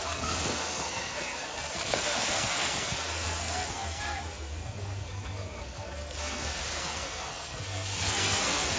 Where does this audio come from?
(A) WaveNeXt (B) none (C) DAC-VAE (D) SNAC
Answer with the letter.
D